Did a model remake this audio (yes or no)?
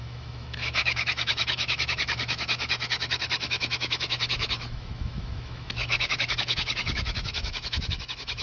yes